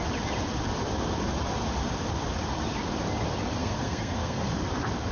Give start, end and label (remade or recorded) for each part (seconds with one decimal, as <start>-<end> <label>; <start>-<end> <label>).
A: 0.0-3.6 recorded; 3.6-4.5 remade; 4.5-5.1 recorded